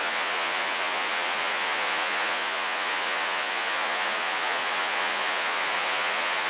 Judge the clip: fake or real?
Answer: fake